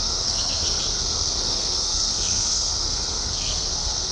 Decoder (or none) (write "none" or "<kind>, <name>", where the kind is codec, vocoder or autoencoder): codec, SNAC